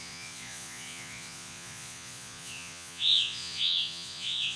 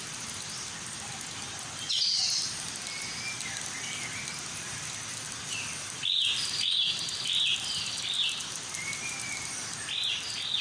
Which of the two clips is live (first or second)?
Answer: second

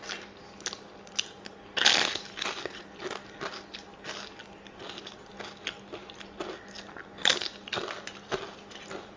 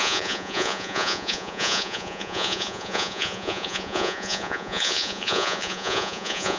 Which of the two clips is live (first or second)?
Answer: first